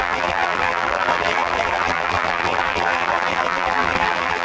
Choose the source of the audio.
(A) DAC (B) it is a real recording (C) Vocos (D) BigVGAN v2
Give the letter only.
D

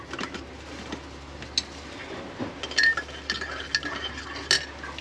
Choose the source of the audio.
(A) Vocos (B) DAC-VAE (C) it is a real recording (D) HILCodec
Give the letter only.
C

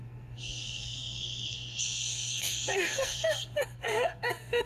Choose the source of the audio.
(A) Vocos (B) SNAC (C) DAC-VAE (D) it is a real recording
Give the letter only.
B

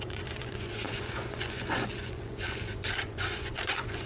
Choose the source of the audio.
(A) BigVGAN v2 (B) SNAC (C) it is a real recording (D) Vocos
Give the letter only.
D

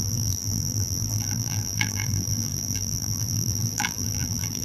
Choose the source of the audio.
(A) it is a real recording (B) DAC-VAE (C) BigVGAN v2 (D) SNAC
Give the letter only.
C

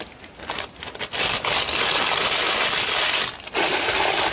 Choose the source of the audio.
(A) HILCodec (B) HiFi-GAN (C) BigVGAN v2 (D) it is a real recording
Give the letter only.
D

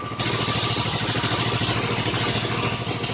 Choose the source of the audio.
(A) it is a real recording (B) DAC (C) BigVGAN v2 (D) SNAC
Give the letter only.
A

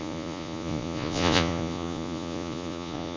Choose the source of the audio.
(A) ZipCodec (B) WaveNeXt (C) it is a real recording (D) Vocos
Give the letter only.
D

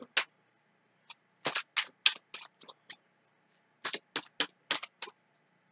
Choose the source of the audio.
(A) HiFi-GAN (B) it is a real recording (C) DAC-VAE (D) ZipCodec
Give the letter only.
B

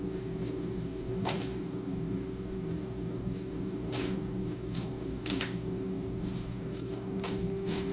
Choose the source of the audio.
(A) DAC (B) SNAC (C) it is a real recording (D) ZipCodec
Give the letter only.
A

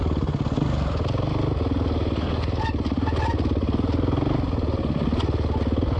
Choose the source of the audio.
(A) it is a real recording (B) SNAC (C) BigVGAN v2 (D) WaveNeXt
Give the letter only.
A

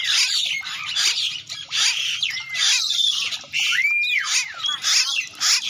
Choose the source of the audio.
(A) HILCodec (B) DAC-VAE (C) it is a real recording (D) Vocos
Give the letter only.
C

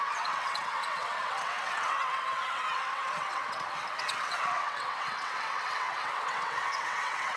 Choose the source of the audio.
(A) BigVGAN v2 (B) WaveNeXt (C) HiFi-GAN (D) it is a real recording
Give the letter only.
B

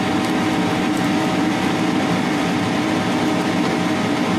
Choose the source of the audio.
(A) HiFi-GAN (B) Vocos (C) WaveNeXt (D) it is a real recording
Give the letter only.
D